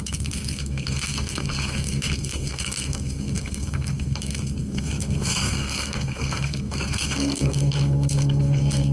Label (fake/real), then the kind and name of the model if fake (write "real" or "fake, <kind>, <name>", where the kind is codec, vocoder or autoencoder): fake, codec, SNAC